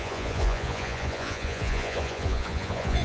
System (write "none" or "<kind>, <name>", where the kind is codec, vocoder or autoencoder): vocoder, Vocos